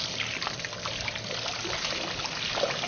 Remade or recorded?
recorded